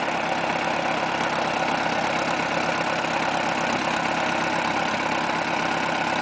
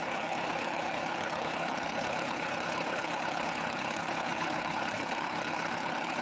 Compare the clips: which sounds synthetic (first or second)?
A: second